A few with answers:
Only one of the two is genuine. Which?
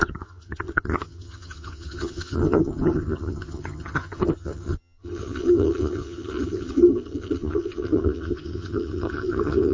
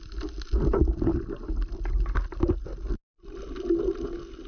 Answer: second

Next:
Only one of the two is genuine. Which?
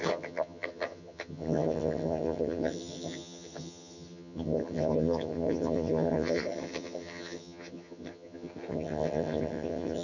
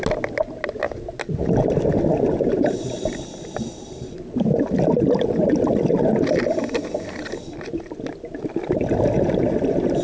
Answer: second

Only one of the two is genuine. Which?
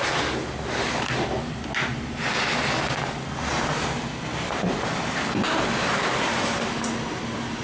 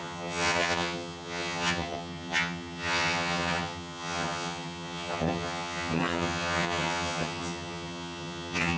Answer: first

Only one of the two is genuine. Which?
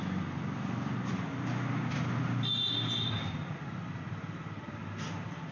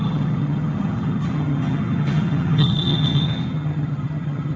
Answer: first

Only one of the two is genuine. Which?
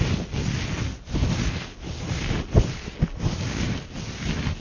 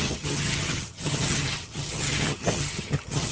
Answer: first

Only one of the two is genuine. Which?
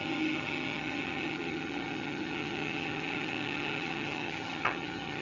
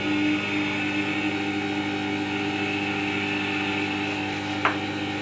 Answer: second